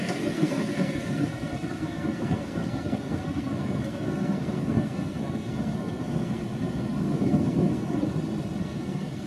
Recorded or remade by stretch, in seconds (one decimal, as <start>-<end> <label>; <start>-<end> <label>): 0.0-8.1 remade; 8.1-8.6 recorded; 8.6-9.3 remade